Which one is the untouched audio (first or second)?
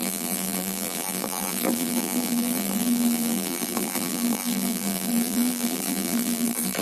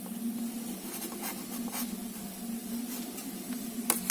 second